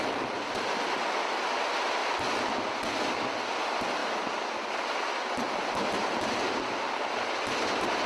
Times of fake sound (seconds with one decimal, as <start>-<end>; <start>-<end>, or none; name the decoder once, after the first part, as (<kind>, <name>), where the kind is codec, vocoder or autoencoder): 2.0-3.5 (vocoder, BigVGAN v2); 4.0-4.7